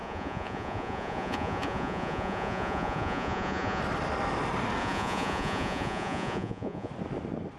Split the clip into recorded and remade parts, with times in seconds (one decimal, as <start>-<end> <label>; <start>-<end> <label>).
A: 0.0-3.8 remade; 3.8-4.8 recorded; 4.8-6.9 remade; 6.9-7.6 recorded